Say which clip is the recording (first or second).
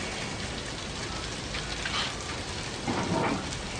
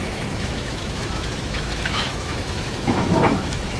first